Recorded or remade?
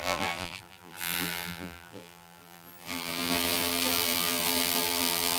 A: remade